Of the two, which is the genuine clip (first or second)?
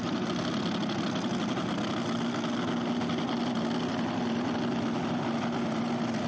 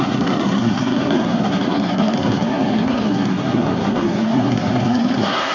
first